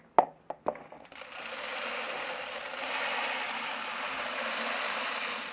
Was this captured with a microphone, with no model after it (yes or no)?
yes